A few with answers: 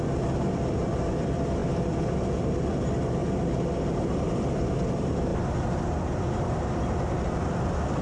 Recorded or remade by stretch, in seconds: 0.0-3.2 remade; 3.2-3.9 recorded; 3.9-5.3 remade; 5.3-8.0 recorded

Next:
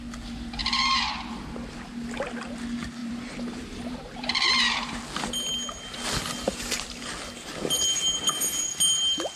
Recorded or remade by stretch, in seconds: 0.0-0.6 recorded; 0.6-1.3 remade; 1.3-3.0 recorded; 3.0-5.0 remade; 5.0-9.4 recorded

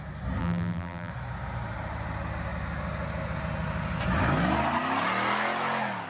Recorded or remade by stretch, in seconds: 0.0-0.4 recorded; 0.4-1.1 remade; 1.1-6.1 recorded

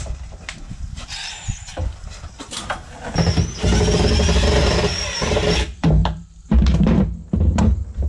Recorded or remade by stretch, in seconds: 0.0-1.7 remade; 1.7-4.6 recorded; 4.6-8.1 remade

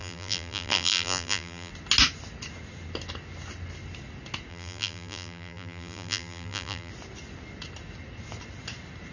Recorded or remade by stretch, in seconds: 0.0-1.7 remade; 1.7-4.5 recorded; 4.5-6.9 remade; 6.9-9.1 recorded

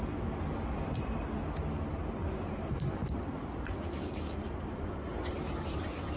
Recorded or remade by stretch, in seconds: 0.0-2.2 recorded; 2.2-6.2 remade